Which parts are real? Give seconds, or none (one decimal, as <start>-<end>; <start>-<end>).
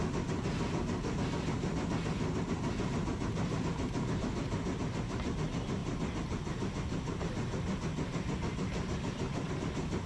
0.0-10.1